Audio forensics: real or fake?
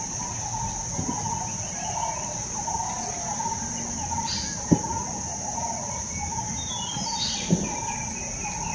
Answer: real